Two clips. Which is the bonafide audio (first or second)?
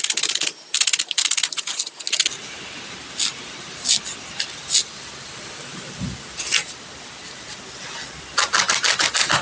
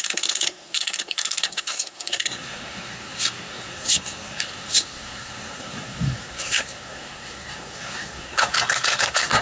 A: first